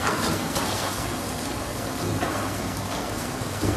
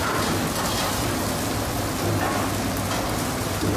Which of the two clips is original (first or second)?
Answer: second